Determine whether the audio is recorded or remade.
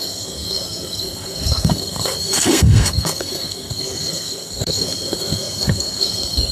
remade